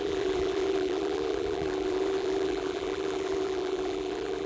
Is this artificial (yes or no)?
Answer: yes